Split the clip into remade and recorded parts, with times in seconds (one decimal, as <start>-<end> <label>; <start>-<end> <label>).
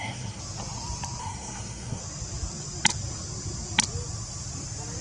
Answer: 0.0-0.4 remade; 0.4-1.2 recorded; 1.2-2.0 remade; 2.0-5.0 recorded